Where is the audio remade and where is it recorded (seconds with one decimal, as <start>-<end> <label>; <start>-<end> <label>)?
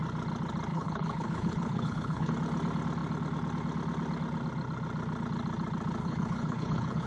0.0-0.7 recorded; 0.7-2.3 remade; 2.3-6.0 recorded; 6.0-7.1 remade